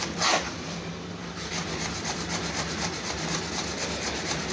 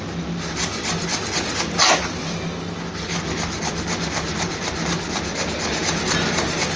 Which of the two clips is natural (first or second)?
second